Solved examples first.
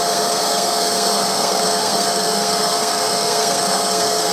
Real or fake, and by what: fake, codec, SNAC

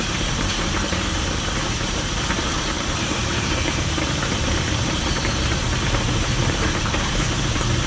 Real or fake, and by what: fake, vocoder, BigVGAN v2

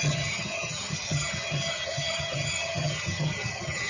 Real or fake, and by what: fake, vocoder, HiFi-GAN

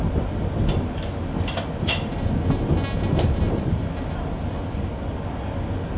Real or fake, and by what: real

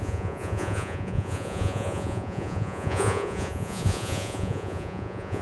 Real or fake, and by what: fake, vocoder, Vocos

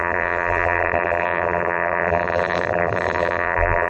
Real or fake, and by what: fake, vocoder, BigVGAN v2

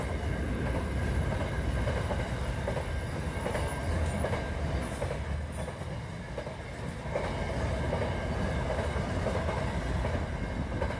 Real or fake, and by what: real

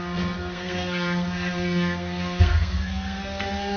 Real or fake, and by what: fake, codec, SNAC